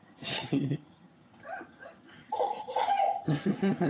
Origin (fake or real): fake